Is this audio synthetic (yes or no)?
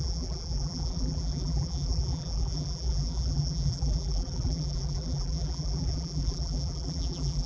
yes